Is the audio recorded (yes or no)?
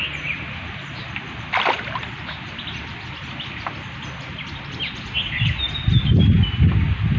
yes